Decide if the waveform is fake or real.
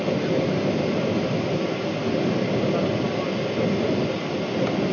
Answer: real